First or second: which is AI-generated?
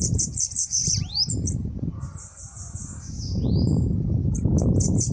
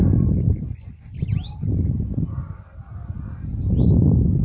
first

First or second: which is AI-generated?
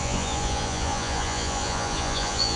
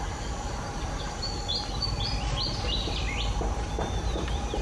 first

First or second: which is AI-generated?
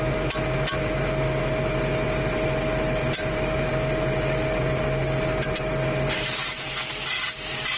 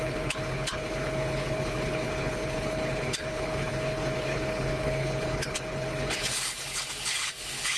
second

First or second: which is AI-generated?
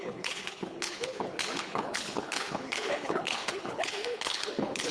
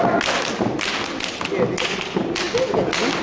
first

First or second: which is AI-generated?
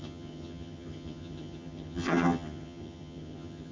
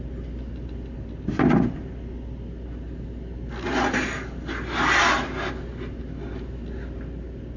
first